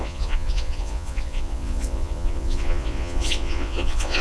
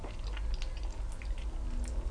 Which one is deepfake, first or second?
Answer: first